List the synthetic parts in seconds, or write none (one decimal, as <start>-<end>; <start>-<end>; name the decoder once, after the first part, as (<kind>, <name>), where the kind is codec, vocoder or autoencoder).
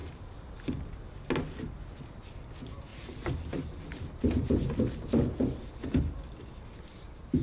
none